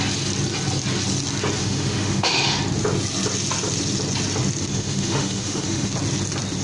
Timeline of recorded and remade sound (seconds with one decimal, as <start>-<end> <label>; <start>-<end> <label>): 0.0-1.6 recorded; 1.6-2.6 remade; 2.6-4.7 recorded; 4.7-5.9 remade; 5.9-6.6 recorded